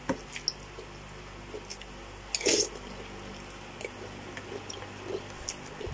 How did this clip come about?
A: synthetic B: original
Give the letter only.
B